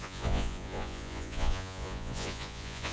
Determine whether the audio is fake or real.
fake